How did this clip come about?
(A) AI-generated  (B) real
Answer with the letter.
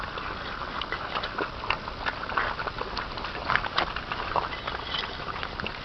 B